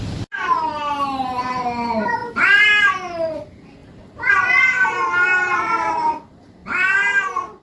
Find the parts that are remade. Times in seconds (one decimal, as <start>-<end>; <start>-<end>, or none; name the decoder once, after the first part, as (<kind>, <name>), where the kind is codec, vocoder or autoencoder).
none